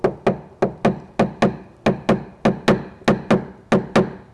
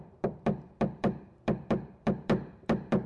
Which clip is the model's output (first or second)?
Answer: second